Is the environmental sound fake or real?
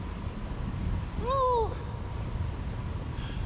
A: real